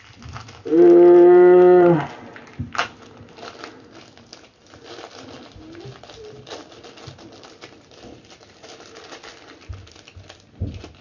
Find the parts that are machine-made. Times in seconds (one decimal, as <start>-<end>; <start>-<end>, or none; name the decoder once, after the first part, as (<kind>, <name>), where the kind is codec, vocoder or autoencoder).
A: none